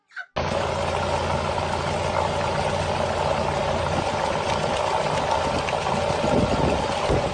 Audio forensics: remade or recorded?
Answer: recorded